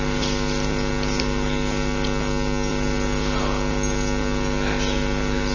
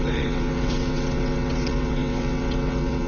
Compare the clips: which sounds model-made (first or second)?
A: second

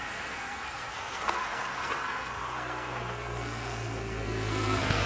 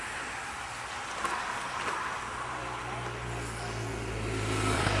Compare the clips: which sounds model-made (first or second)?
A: first